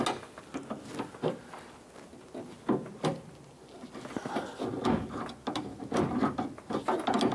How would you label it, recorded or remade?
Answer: recorded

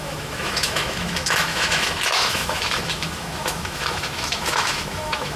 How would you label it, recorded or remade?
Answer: remade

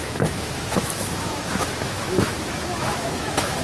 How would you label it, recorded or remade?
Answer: remade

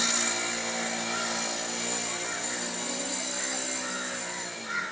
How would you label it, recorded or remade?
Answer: recorded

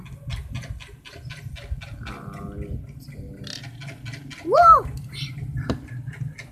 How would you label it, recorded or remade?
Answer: recorded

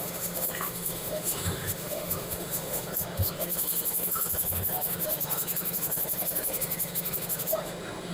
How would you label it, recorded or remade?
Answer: remade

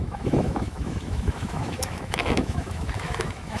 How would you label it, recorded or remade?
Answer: remade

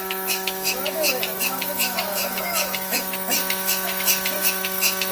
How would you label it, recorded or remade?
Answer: remade